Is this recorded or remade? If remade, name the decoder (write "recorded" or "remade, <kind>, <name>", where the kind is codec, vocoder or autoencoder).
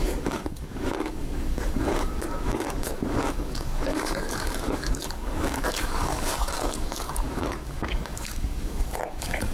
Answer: remade, codec, DAC